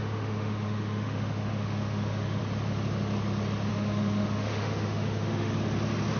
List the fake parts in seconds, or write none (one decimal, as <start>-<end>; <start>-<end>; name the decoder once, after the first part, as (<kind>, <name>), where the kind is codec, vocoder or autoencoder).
0.0-2.4 (autoencoder, DAC-VAE); 3.7-5.5

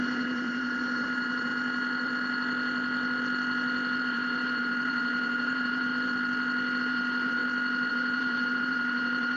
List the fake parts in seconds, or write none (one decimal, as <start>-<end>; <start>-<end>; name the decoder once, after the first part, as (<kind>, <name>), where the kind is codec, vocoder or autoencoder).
0.0-1.5 (vocoder, BigVGAN v2); 4.0-5.9; 6.8-7.4; 7.9-9.4

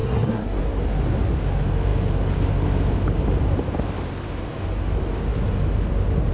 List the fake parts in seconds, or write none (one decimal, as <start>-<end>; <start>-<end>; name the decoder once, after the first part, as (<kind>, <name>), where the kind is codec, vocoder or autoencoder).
0.0-0.6 (codec, SNAC)

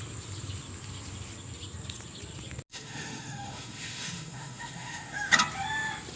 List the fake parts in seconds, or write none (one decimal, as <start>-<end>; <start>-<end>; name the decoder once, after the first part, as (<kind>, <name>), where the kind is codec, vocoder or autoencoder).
2.7-5.3 (autoencoder, DAC-VAE)

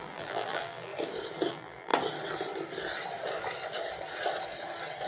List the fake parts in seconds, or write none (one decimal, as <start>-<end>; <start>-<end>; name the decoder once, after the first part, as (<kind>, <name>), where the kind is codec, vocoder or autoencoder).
0.0-0.9 (vocoder, BigVGAN v2); 1.5-1.9

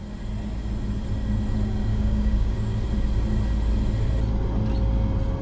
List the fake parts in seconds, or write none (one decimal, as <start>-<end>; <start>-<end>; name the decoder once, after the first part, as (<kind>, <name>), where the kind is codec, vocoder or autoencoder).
1.9-2.8 (codec, DAC)

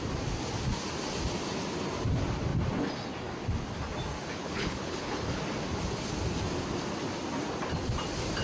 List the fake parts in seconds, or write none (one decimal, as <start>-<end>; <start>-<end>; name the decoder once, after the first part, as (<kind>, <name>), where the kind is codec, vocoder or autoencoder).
4.4-5.4 (codec, HILCodec)

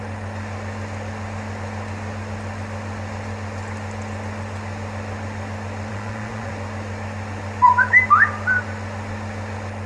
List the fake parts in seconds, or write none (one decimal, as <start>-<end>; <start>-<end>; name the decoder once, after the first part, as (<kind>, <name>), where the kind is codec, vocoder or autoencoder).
5.9-6.5 (vocoder, Vocos)